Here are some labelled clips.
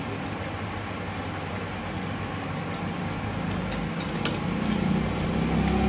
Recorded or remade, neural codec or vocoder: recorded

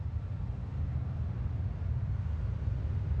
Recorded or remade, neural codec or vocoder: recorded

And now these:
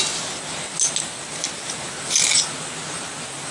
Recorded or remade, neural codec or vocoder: recorded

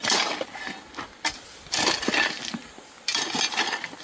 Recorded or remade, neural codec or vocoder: recorded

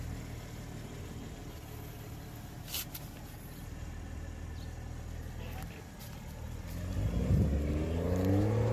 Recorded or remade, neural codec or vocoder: recorded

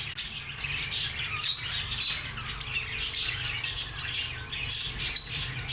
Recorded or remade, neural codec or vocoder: recorded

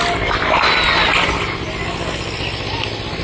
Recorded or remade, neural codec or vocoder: recorded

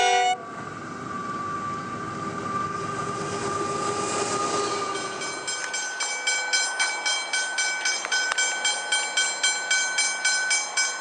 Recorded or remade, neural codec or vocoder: recorded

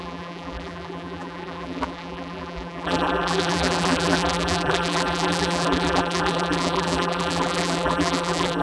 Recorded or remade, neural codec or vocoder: remade, vocoder, BigVGAN v2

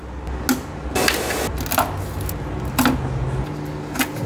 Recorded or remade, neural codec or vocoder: recorded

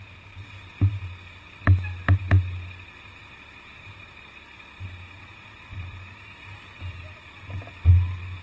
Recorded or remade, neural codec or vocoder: recorded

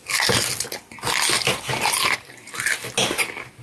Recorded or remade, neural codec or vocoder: recorded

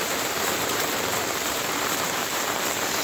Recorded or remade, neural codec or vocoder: remade, vocoder, BigVGAN v2